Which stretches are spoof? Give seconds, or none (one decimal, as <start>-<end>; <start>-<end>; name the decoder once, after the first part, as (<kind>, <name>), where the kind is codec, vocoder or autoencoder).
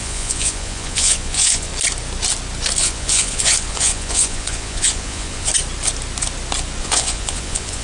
0.0-1.7 (vocoder, Vocos); 2.8-5.5; 6.8-7.8